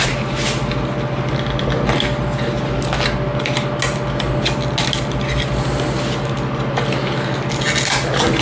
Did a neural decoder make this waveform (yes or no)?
no